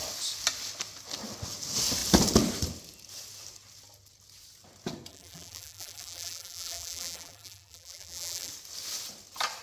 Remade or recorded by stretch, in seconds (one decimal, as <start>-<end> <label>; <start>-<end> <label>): 0.0-5.1 recorded; 5.1-8.5 remade; 8.5-9.6 recorded